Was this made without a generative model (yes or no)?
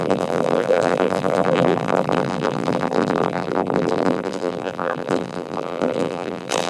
no